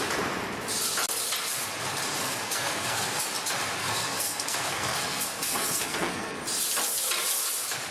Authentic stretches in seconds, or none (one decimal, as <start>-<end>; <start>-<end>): 0.0-2.2; 3.2-3.8; 6.4-7.9